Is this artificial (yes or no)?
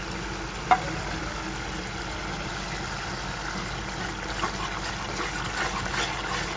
no